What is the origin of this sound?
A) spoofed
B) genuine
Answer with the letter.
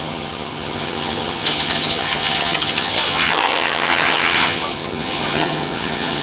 A